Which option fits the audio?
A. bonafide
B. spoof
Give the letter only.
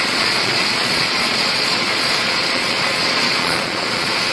B